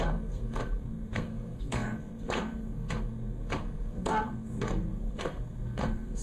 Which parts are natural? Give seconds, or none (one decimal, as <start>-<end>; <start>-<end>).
none